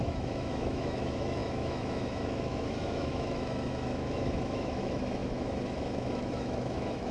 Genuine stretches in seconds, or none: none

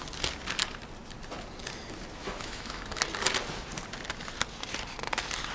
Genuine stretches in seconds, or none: 0.0-2.2; 3.0-5.5